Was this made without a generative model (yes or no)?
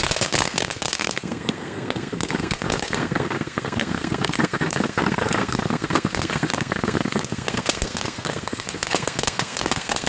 no